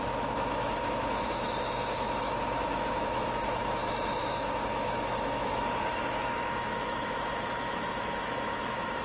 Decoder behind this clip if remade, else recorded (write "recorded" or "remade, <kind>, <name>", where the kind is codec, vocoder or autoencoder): remade, autoencoder, DAC-VAE